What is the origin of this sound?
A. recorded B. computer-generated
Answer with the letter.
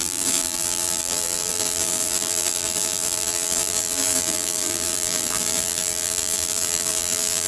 B